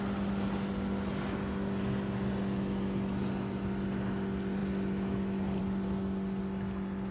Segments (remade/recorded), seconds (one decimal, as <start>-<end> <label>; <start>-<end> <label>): 0.0-7.1 recorded